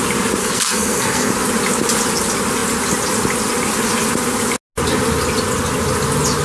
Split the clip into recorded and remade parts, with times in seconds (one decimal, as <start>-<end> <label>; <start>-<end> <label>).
0.0-0.4 recorded; 0.4-1.3 remade; 1.3-6.4 recorded